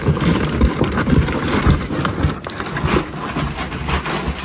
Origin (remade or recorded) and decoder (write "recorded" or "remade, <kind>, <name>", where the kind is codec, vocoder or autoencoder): recorded